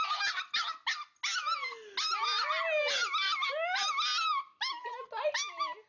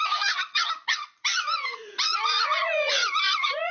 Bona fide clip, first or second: first